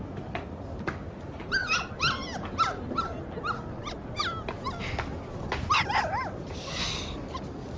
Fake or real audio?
real